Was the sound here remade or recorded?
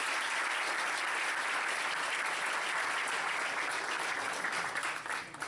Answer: recorded